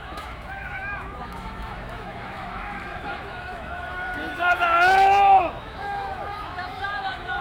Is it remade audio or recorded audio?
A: remade